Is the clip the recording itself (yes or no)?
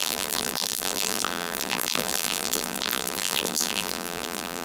no